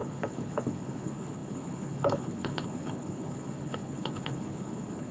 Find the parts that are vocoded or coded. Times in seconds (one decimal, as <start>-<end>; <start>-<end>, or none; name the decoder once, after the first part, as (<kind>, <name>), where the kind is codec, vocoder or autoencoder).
0.0-5.1 (codec, HILCodec)